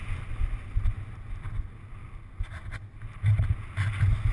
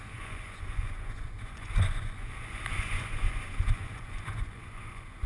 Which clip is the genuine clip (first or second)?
first